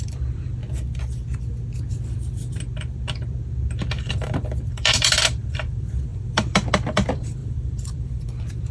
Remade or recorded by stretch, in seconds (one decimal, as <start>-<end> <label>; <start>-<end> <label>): 0.0-0.6 remade; 0.6-4.1 recorded; 4.1-8.7 remade